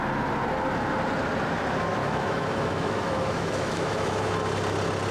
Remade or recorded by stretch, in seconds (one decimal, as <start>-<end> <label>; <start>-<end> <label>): 0.0-2.0 recorded; 2.0-4.3 remade; 4.3-5.1 recorded